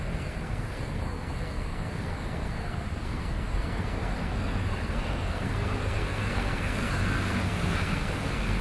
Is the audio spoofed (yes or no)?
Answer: yes